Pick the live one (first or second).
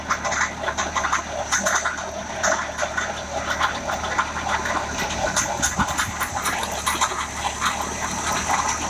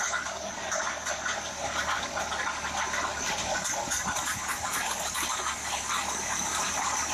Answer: first